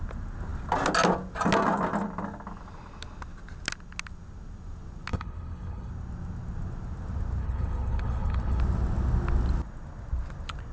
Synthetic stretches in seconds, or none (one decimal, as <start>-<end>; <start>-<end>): 5.1-5.9; 7.4-8.6